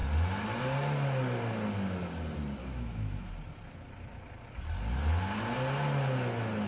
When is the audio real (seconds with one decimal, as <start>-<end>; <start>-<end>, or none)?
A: 0.0-2.6; 3.3-6.7